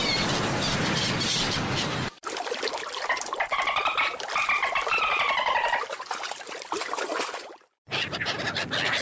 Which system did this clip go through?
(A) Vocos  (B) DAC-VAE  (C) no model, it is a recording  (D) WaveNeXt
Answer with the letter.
C